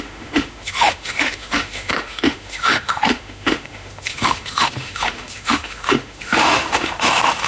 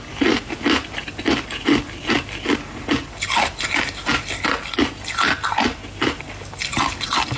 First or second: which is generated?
first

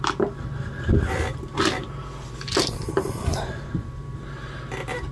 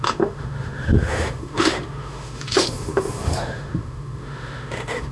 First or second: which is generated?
second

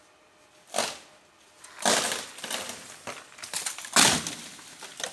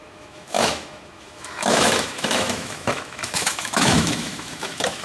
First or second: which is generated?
second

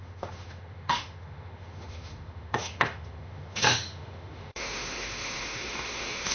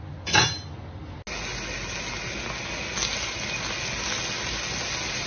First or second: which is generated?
first